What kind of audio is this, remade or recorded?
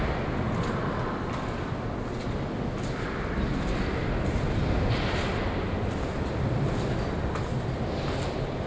recorded